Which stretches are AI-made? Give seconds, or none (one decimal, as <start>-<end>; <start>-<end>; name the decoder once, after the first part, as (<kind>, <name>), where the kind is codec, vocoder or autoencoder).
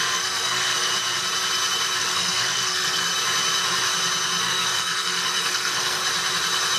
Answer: 0.0-0.9 (codec, SNAC); 2.0-3.1; 4.4-6.0